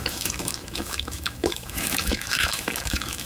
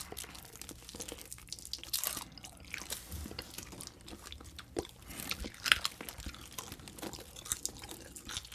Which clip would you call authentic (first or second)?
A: second